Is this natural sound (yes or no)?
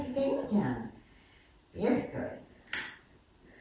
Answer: yes